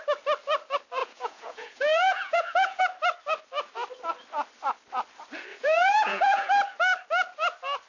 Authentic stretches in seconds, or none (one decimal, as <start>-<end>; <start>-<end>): 0.0-1.0; 2.8-5.5; 6.5-7.9